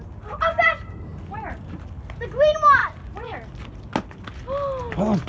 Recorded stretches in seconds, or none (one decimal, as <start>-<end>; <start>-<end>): 0.0-5.3

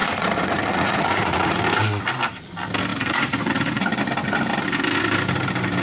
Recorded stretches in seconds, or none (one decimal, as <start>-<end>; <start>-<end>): 1.6-2.9; 3.9-5.8

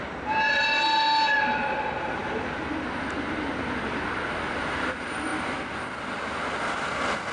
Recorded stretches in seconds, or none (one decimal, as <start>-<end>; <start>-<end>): 0.0-7.3

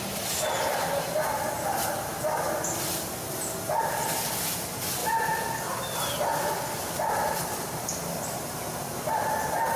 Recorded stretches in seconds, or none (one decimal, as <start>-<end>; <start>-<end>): 0.0-9.8

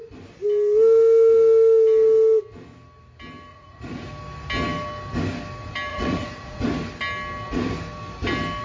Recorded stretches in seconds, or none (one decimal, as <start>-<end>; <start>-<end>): 0.0-3.5; 4.1-5.9; 6.6-8.6

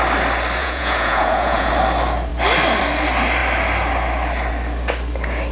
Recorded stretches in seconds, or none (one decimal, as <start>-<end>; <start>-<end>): 0.0-0.6; 1.7-5.5

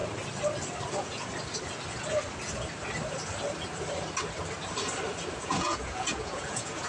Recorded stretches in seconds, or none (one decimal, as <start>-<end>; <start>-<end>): 0.0-0.9; 1.3-5.4